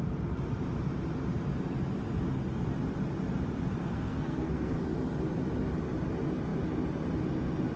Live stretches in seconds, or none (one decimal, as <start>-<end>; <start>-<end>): 0.0-3.8; 4.8-7.8